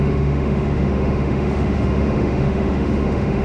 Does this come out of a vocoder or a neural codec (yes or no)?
yes